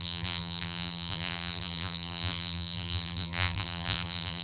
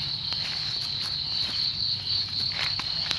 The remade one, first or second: first